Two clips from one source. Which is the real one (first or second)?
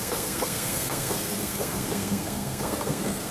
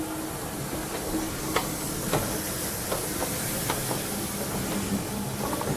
second